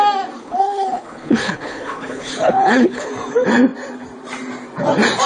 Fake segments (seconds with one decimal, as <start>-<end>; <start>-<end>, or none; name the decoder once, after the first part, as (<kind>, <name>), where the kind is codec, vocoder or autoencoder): 0.4-3.1 (codec, HILCodec)